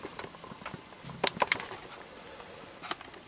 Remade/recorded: recorded